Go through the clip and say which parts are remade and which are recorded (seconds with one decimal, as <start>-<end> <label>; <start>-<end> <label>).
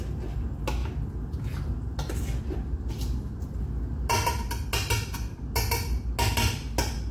0.0-7.1 recorded